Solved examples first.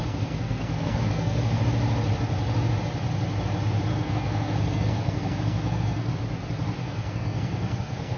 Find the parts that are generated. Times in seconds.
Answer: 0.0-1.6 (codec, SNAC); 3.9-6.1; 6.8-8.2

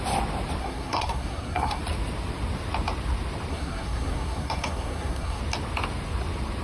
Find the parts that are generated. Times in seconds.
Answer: 0.6-1.8 (codec, SNAC); 3.5-5.4

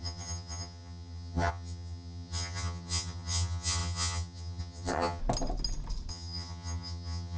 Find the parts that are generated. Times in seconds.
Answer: 0.0-5.2 (vocoder, HiFi-GAN); 6.1-7.4

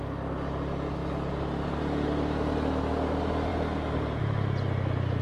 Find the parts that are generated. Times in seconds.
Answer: none

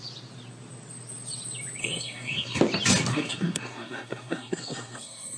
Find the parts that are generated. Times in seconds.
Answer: 1.8-2.6 (codec, SNAC); 3.1-5.4

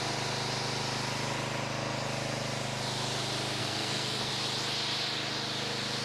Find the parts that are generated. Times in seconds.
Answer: 3.6-4.3 (codec, SNAC)